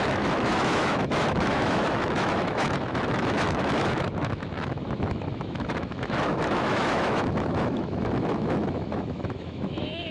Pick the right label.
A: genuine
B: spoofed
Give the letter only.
B